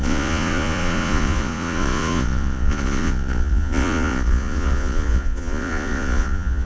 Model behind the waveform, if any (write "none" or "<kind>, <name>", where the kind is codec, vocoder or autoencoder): vocoder, Vocos